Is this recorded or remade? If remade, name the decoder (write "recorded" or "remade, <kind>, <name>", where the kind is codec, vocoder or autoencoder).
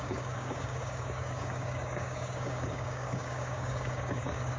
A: remade, codec, DAC